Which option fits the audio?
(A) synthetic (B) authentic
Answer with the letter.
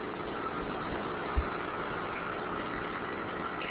B